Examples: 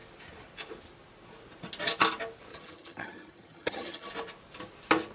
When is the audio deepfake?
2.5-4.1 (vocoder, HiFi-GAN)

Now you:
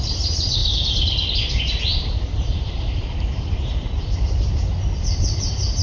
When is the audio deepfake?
none

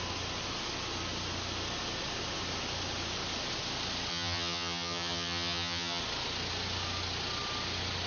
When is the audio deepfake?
4.1-6.0 (vocoder, HiFi-GAN)

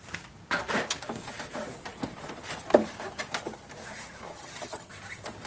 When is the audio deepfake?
4.3-4.9 (vocoder, HiFi-GAN)

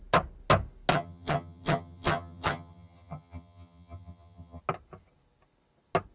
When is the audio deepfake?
0.9-4.6 (vocoder, HiFi-GAN)

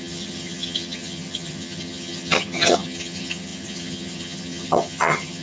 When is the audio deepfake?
0.0-5.4 (vocoder, HiFi-GAN)

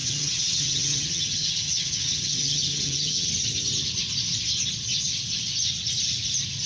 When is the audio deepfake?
0.0-3.3 (vocoder, HiFi-GAN)